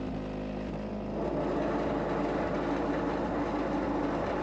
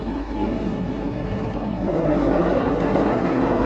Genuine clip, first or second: first